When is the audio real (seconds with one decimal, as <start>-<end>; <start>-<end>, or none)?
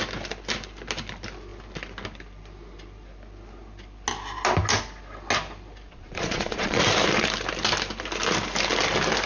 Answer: 0.0-5.9; 6.8-9.3